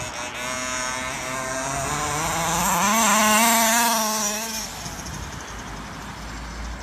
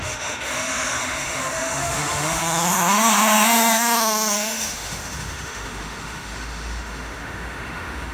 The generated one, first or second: second